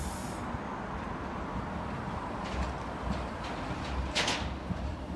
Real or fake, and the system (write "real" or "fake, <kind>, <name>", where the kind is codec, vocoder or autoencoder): real